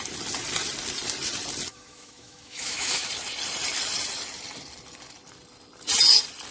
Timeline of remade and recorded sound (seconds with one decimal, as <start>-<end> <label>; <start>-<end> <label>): 0.0-1.7 recorded; 1.7-3.1 remade; 3.1-6.5 recorded